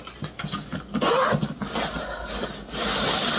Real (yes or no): yes